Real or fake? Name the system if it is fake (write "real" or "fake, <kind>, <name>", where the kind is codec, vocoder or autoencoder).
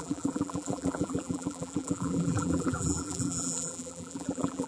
fake, vocoder, BigVGAN v2